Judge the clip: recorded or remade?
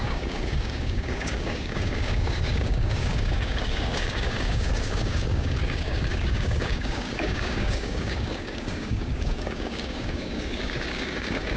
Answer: remade